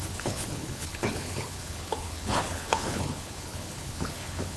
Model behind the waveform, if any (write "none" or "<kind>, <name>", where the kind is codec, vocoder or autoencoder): codec, HILCodec